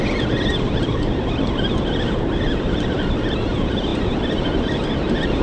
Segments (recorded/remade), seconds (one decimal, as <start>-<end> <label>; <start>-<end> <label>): 0.0-5.4 recorded